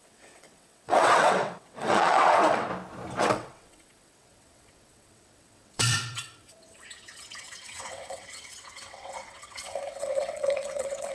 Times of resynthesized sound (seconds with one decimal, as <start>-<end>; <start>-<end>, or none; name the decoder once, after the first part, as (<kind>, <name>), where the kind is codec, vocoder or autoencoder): 0.0-2.7 (vocoder, WaveNeXt); 3.2-11.1